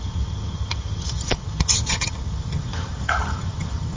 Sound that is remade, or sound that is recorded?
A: remade